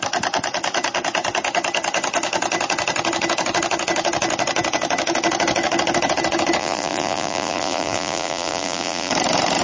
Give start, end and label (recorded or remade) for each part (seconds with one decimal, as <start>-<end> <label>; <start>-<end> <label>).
0.0-6.6 recorded; 6.6-9.1 remade; 9.1-9.6 recorded